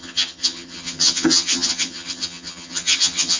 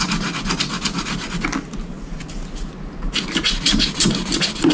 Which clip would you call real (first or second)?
second